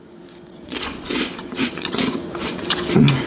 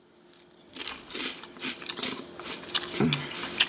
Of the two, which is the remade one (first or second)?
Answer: first